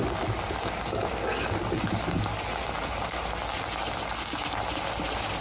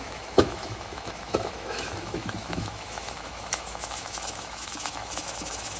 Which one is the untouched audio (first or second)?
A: first